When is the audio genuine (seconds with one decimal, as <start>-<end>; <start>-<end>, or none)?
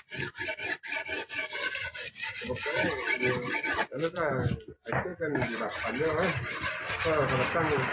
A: 0.0-3.7; 4.3-7.9